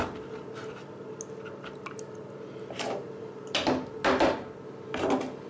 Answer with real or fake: real